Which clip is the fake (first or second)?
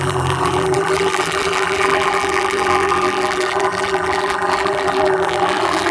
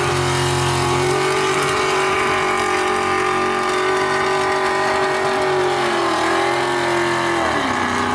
first